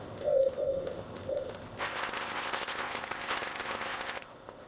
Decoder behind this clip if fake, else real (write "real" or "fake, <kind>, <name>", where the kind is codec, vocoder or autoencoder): fake, codec, ZipCodec